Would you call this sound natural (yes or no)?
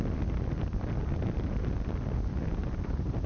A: yes